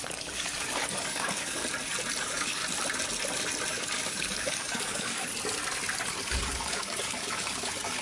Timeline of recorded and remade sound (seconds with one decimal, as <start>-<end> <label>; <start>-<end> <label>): 0.0-1.6 remade; 1.6-2.2 recorded; 2.2-2.6 remade; 2.6-3.7 recorded; 3.7-5.3 remade; 5.3-6.1 recorded; 6.1-8.0 remade